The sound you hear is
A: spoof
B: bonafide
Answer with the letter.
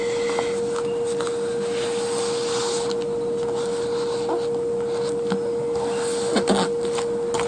B